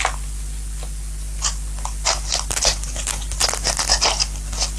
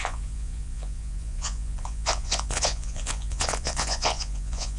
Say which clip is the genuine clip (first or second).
first